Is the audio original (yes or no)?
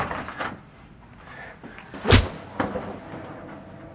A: no